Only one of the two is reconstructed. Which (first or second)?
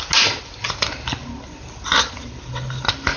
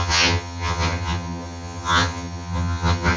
second